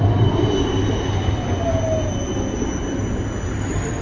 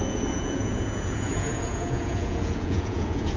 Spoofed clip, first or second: second